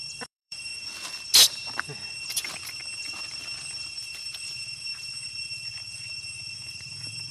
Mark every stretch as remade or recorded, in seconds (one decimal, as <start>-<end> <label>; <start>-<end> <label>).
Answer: 0.0-0.7 remade; 0.7-2.3 recorded; 2.3-4.9 remade; 4.9-6.7 recorded; 6.7-7.3 remade